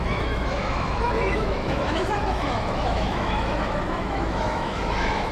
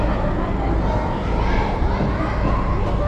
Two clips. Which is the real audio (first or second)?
second